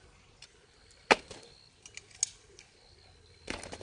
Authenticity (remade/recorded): recorded